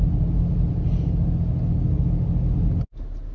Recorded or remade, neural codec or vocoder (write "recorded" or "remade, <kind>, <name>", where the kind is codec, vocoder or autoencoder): recorded